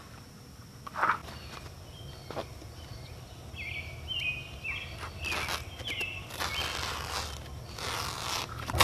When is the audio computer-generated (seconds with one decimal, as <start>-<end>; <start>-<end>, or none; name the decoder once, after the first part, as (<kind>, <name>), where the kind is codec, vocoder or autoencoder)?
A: 1.2-3.3 (vocoder, BigVGAN v2)